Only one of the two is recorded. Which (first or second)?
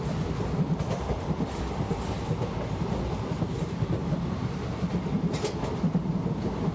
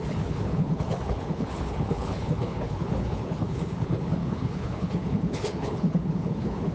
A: first